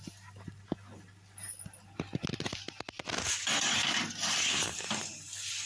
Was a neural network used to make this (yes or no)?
no